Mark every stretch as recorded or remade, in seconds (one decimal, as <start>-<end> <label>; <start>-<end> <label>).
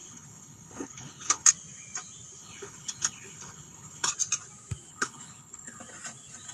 0.0-1.5 remade; 1.5-2.4 recorded; 2.4-4.1 remade; 4.1-4.9 recorded; 4.9-5.8 remade; 5.8-6.5 recorded